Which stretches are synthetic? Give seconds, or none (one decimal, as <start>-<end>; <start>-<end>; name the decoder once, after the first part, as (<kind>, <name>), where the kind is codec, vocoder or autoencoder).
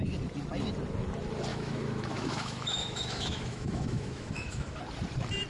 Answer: 1.5-4.8 (autoencoder, DAC-VAE)